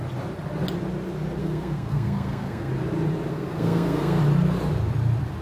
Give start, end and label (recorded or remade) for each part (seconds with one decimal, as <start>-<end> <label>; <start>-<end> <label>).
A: 0.0-1.4 recorded; 1.4-2.7 remade; 2.7-3.3 recorded; 3.3-4.2 remade; 4.2-5.4 recorded